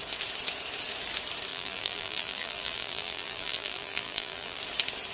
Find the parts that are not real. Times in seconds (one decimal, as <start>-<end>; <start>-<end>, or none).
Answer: 1.5-4.6